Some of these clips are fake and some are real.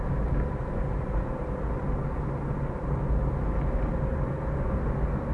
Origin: real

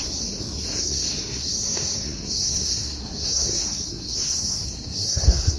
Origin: fake